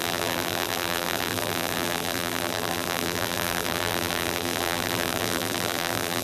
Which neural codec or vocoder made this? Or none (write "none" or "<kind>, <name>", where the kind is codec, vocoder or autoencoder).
vocoder, BigVGAN v2